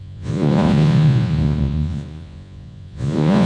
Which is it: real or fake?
fake